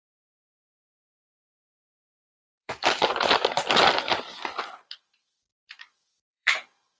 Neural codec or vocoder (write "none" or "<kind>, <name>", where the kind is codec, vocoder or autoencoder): vocoder, BigVGAN v2